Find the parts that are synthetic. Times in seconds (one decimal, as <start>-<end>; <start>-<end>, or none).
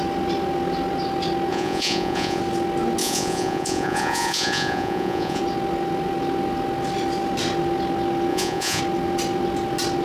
1.5-2.4; 3.0-5.4; 8.3-8.8